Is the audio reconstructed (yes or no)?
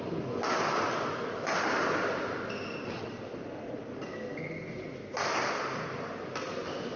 no